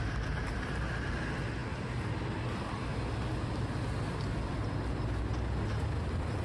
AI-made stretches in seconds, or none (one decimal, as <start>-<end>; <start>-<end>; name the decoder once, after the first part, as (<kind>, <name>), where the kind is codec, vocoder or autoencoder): none